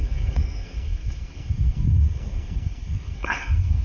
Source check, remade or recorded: remade